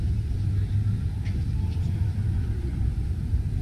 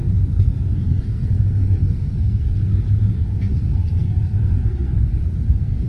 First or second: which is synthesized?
second